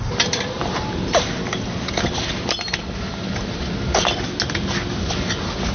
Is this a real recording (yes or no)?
yes